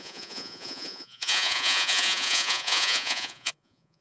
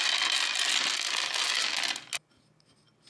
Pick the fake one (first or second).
first